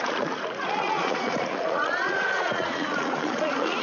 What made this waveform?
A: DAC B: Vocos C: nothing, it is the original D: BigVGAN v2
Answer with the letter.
B